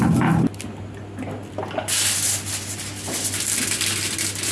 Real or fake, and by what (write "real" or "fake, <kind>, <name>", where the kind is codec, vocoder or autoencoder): real